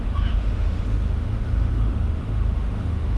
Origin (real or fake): fake